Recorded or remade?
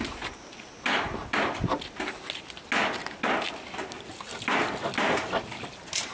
recorded